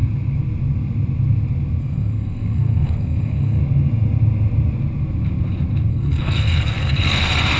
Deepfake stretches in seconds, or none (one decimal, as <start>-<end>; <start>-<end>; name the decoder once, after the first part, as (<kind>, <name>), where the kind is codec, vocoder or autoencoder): 1.8-3.6 (codec, SNAC); 5.9-7.6